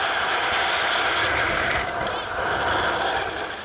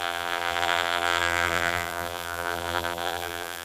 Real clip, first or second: first